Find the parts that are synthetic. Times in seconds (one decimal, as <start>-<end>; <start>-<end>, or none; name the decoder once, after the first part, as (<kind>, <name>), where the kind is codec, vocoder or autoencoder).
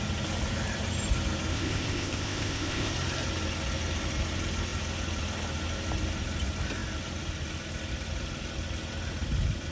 1.5-2.9 (codec, ZipCodec)